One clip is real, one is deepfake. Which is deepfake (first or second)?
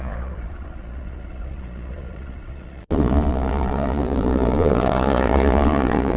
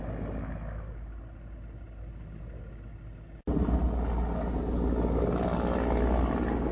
first